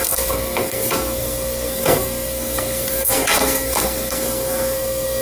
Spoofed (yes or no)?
yes